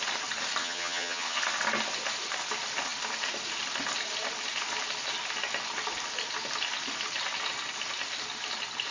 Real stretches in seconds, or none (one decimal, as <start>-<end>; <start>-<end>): 0.0-0.6; 1.4-8.9